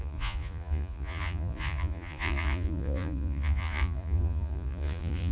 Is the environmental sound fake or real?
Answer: fake